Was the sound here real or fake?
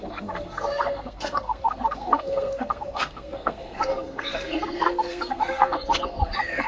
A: fake